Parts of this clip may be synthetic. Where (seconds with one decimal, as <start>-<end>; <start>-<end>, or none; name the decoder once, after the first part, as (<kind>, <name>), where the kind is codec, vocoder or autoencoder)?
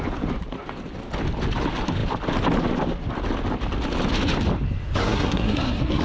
5.0-6.0 (codec, SNAC)